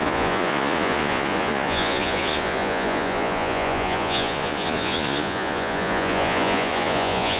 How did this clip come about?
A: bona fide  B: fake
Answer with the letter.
B